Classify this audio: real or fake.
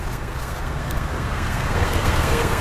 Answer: fake